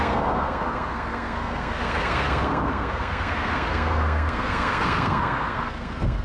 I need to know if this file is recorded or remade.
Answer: remade